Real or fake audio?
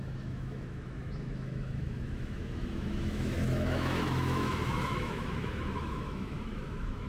fake